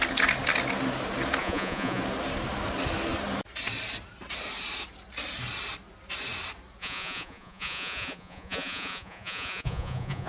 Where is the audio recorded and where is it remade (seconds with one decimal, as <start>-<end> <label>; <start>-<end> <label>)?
0.0-1.4 recorded; 1.4-2.0 remade; 2.0-6.8 recorded; 6.8-10.3 remade